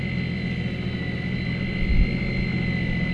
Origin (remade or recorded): recorded